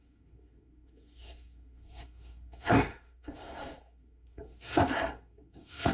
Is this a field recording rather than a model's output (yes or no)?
no